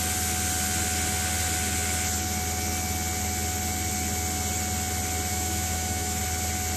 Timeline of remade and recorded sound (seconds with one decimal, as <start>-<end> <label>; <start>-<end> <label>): 0.0-5.3 recorded; 5.3-6.2 remade; 6.2-6.8 recorded